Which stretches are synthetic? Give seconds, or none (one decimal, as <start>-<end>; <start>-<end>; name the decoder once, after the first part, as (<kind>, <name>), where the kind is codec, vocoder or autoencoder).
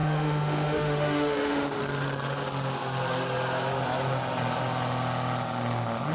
0.0-1.8 (autoencoder, DAC-VAE)